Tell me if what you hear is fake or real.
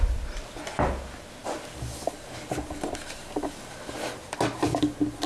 real